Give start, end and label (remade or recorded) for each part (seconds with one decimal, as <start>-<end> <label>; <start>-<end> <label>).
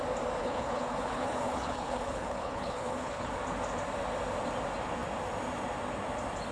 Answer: 0.0-0.4 recorded; 0.4-3.3 remade; 3.3-6.5 recorded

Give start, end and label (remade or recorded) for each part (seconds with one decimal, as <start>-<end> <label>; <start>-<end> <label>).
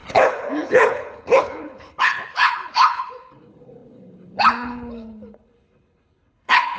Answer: 0.0-6.8 remade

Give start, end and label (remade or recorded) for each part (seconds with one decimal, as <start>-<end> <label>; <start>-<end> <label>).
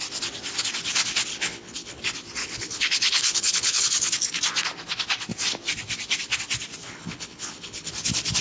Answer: 0.0-1.3 recorded; 1.3-2.0 remade; 2.0-2.4 recorded; 2.4-3.8 remade; 3.8-6.8 recorded; 6.8-7.9 remade; 7.9-8.4 recorded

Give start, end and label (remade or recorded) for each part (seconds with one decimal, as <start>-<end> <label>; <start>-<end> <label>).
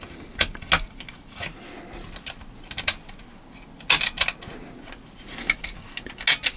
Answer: 0.0-6.6 recorded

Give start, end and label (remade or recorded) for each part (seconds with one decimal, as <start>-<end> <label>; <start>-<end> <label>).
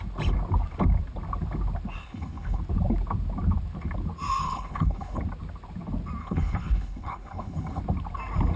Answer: 0.0-2.0 recorded; 2.0-2.6 remade; 2.6-4.4 recorded; 4.4-5.2 remade; 5.2-6.2 recorded; 6.2-7.8 remade; 7.8-8.6 recorded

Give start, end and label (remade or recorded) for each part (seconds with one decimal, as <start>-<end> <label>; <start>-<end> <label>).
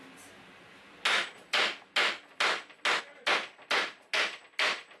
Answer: 0.0-5.0 recorded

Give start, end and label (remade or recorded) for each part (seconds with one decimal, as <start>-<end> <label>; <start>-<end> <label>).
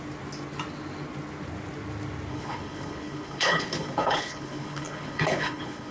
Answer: 0.0-2.3 recorded; 2.3-5.9 remade